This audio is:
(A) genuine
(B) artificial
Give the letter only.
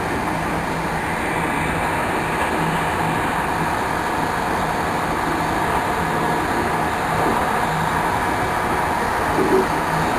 A